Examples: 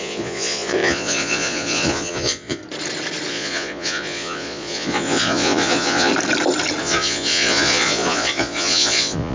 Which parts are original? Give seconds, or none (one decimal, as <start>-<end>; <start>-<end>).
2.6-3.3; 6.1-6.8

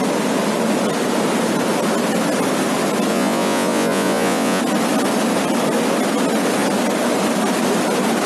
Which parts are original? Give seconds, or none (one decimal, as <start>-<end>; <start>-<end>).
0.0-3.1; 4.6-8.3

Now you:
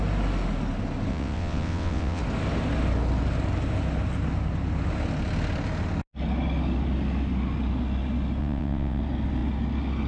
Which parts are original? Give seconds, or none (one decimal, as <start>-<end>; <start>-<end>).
0.0-1.1; 2.2-8.4; 9.0-10.1